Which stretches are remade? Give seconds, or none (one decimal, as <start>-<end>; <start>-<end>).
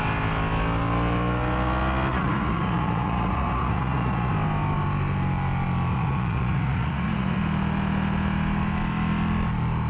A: 2.1-4.3; 5.9-7.4